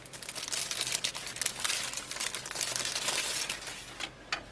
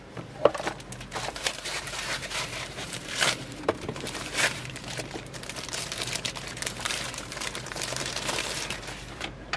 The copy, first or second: second